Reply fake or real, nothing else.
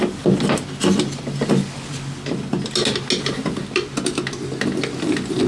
real